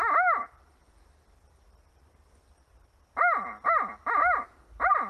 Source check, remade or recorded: recorded